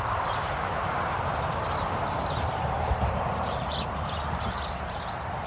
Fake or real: fake